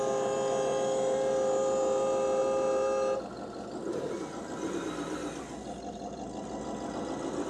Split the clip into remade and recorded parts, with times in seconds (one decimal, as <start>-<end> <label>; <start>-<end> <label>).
0.0-7.5 recorded